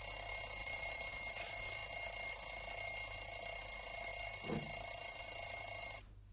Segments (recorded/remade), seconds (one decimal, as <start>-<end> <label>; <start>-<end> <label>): 0.0-0.6 recorded; 0.6-1.1 remade; 1.1-6.3 recorded